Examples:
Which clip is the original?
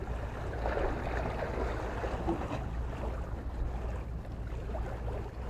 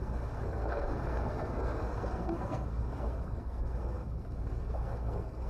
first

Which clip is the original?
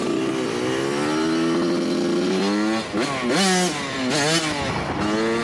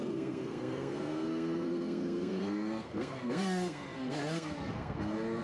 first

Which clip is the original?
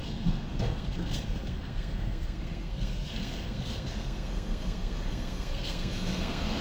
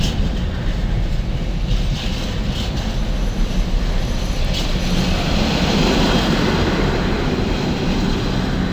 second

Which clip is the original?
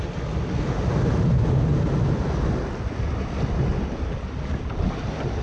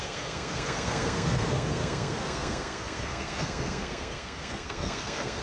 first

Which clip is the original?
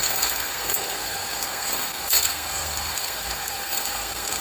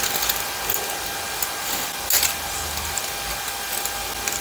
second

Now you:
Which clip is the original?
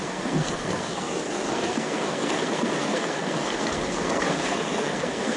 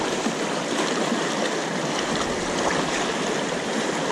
second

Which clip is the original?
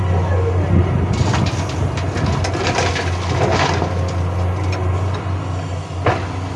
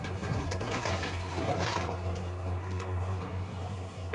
first